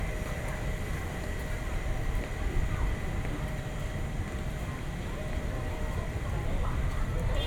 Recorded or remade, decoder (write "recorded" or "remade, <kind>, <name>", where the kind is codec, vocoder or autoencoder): remade, vocoder, BigVGAN v2